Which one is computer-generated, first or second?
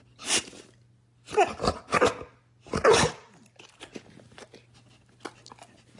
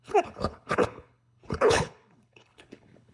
second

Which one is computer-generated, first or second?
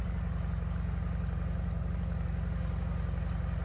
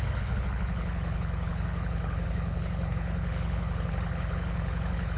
second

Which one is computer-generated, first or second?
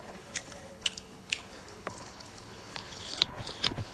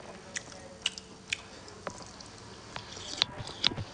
first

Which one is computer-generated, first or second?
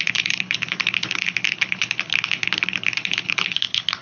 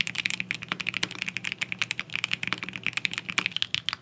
first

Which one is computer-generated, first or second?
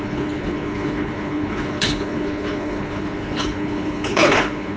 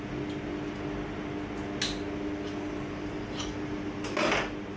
first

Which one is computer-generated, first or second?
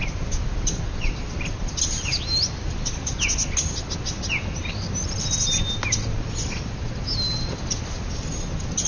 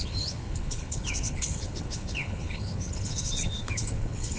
second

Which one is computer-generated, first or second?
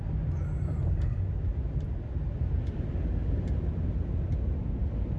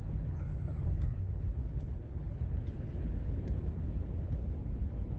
second